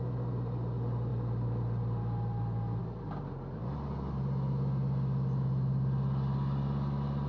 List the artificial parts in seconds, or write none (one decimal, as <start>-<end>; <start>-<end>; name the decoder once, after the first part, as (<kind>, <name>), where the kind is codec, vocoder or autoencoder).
none